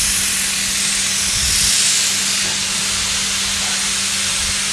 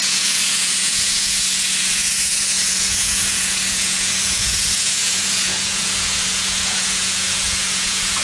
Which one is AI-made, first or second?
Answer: second